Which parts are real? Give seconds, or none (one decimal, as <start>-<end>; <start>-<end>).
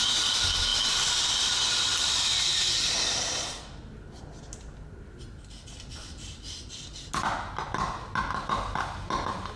0.0-9.6